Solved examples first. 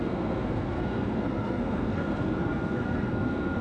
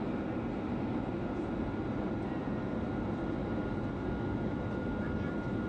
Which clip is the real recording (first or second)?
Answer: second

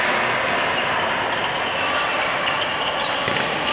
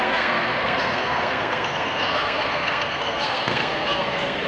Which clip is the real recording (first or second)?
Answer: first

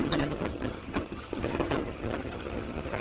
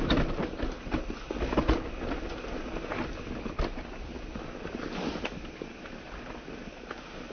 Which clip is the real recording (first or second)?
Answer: second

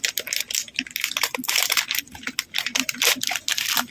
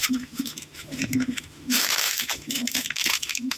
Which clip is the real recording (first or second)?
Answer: first